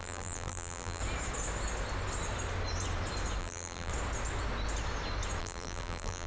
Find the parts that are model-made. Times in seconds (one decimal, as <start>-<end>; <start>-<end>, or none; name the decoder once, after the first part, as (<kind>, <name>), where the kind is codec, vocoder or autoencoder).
0.0-1.0 (vocoder, BigVGAN v2); 3.4-3.9; 5.4-6.3